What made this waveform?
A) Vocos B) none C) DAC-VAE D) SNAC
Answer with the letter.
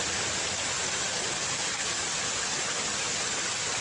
B